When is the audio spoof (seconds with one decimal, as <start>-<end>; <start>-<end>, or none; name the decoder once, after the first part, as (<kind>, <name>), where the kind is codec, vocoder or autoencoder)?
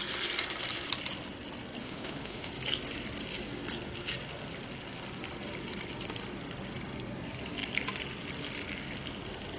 1.8-2.5 (autoencoder, DAC-VAE)